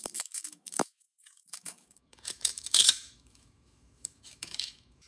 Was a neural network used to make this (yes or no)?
yes